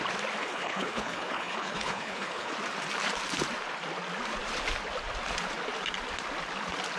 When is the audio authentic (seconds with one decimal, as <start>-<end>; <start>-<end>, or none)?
0.0-0.4; 2.5-7.0